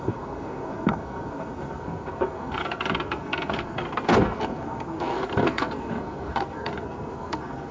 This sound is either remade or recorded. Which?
remade